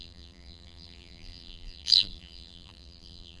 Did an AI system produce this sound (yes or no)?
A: yes